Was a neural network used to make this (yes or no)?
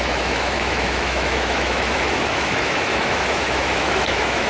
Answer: yes